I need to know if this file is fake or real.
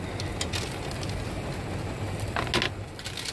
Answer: real